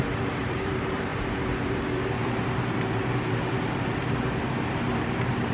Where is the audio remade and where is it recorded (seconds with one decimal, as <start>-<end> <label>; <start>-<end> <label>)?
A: 0.0-5.5 remade